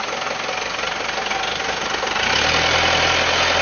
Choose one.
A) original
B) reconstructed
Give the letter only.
A